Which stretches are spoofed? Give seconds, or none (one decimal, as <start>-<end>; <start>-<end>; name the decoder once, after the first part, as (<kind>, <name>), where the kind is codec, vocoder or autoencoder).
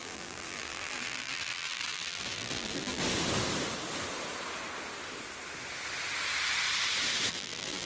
0.0-3.0 (vocoder, BigVGAN v2); 7.3-7.9